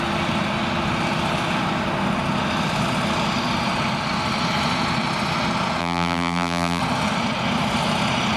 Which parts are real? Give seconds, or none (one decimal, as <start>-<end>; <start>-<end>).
0.0-5.8; 6.8-8.4